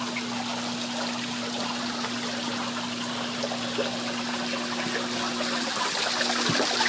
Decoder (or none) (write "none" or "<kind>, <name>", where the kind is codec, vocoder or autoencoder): none